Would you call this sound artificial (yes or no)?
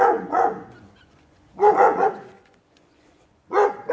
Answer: yes